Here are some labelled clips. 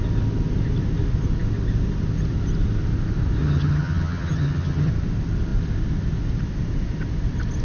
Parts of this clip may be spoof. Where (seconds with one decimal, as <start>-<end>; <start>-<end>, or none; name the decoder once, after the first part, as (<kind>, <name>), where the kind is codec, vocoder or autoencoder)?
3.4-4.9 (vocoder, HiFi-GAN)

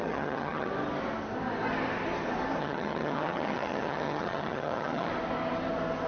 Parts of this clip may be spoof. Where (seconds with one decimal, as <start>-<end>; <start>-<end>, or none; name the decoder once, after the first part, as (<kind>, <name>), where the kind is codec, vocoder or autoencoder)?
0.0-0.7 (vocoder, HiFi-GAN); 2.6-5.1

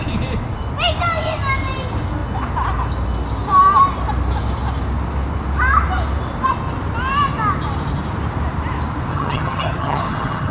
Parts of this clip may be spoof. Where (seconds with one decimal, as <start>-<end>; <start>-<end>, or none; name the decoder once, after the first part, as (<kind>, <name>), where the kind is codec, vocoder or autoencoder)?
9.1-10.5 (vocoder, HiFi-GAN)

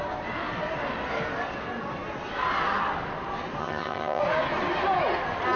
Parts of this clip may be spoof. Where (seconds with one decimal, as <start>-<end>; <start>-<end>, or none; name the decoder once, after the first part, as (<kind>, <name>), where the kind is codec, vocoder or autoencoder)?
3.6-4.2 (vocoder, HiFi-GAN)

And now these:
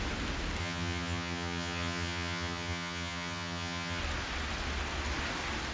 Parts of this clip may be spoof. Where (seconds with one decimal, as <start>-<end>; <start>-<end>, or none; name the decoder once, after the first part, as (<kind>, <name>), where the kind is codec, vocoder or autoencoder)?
0.6-4.0 (vocoder, HiFi-GAN)

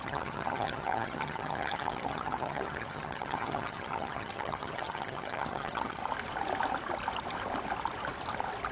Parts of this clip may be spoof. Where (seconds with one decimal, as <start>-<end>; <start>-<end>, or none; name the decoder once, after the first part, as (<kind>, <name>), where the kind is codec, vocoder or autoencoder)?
0.0-6.0 (vocoder, HiFi-GAN)